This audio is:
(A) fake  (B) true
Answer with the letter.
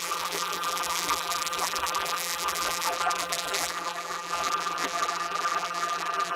A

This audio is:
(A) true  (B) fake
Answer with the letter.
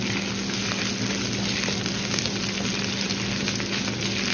A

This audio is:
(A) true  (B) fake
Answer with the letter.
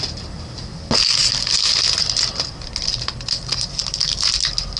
A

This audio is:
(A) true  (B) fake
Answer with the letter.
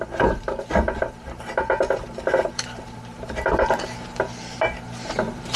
B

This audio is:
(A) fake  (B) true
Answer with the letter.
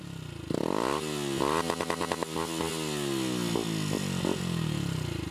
B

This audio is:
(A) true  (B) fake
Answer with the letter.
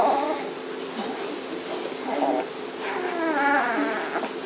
A